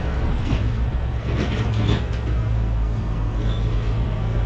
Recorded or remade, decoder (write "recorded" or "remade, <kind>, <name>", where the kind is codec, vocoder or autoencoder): remade, codec, SNAC